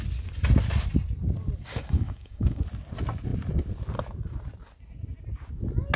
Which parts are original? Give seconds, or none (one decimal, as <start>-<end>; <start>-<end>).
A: 0.0-1.7; 2.6-6.0